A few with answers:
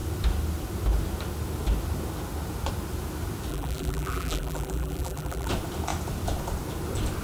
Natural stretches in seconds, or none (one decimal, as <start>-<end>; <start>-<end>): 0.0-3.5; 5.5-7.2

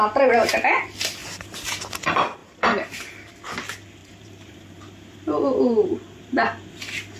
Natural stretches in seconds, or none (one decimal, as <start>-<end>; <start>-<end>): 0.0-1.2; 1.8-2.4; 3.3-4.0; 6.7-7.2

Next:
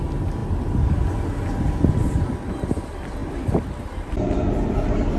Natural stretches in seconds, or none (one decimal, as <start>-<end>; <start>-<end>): 0.4-2.5

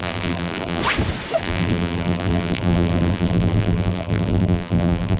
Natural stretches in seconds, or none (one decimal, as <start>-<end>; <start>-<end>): 0.8-1.4